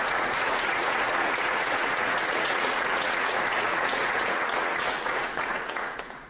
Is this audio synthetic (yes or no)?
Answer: yes